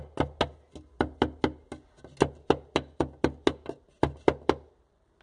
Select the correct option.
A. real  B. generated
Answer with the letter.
A